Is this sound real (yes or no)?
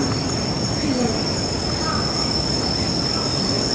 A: yes